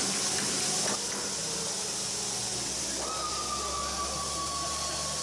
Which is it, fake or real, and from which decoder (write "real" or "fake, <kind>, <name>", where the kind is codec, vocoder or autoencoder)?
real